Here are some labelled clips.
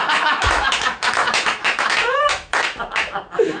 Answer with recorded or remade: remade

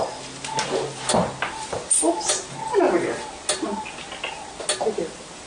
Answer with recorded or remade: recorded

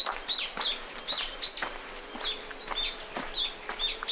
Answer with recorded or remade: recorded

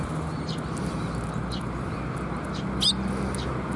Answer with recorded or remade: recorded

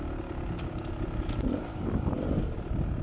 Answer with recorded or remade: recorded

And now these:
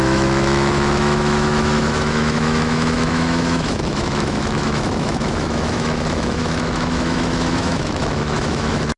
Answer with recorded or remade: remade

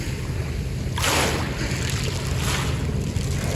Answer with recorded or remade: recorded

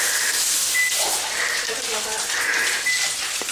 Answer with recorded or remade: recorded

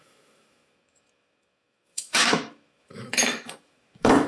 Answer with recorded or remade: remade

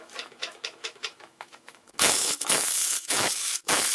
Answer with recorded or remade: remade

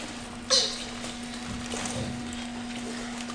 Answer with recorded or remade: recorded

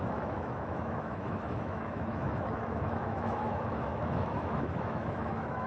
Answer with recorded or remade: remade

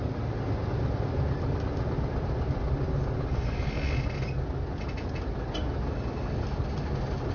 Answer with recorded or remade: recorded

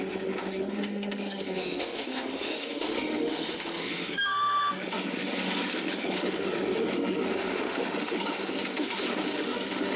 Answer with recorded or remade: remade